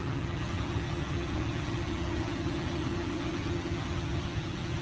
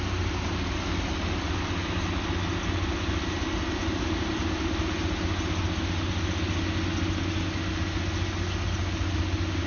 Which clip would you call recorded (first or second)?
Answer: second